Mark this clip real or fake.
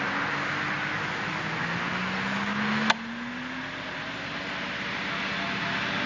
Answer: real